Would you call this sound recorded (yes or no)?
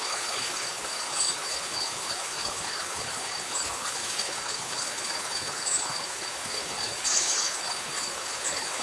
no